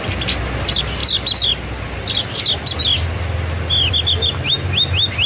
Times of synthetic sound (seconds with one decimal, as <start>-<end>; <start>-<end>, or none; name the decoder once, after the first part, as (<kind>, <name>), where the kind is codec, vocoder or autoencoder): none